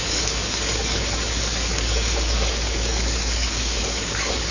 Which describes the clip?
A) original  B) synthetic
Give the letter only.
B